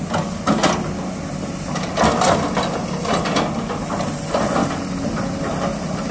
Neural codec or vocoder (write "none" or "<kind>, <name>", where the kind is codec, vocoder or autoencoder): none